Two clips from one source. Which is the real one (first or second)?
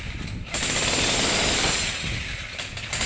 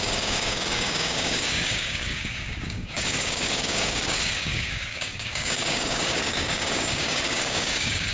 first